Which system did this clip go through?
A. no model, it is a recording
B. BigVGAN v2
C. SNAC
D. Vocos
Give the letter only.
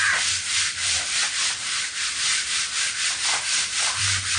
B